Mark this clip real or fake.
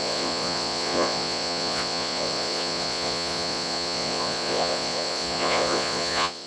fake